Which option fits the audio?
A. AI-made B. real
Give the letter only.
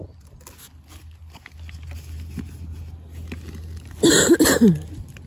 B